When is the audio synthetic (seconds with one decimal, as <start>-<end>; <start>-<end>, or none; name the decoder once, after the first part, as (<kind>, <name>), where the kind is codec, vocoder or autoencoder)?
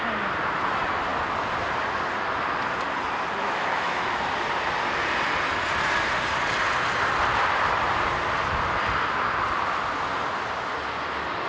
3.4-4.2 (autoencoder, DAC-VAE)